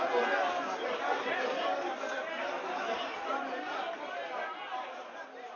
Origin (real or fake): real